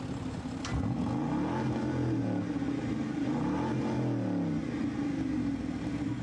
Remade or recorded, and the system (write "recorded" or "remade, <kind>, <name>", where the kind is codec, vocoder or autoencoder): recorded